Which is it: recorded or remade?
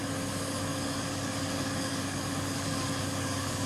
remade